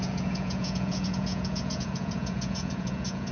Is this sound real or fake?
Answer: fake